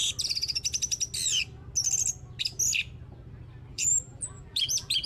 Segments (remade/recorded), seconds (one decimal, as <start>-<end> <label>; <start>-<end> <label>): 0.0-3.7 recorded; 3.7-5.1 remade